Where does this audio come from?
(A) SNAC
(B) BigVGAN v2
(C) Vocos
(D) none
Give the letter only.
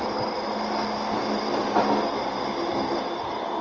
D